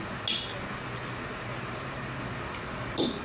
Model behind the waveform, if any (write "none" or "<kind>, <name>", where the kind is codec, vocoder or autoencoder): none